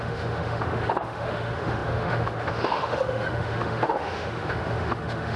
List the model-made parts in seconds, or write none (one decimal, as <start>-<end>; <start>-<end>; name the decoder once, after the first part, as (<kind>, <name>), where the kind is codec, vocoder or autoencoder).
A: 0.0-5.4 (autoencoder, DAC-VAE)